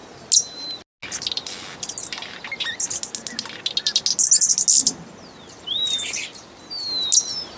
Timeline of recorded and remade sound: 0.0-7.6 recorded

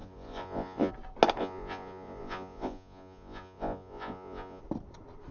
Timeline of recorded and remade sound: 0.0-0.9 remade; 0.9-1.4 recorded; 1.4-4.6 remade; 4.6-5.3 recorded

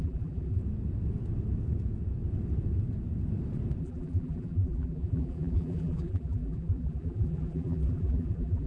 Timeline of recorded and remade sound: 0.0-0.6 remade; 0.6-3.8 recorded; 3.8-8.7 remade

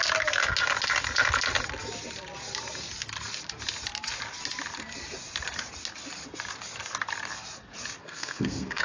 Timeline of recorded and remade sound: 0.0-8.0 recorded; 8.0-8.8 remade

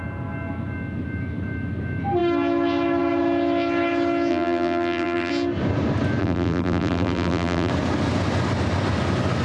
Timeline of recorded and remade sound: 0.0-4.3 recorded; 4.3-5.3 remade; 5.3-6.2 recorded; 6.2-7.7 remade; 7.7-9.4 recorded